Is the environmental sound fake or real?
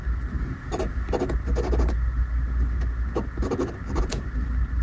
real